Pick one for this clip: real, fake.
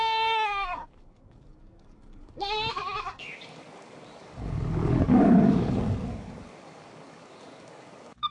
fake